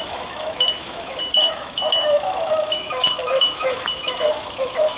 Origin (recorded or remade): remade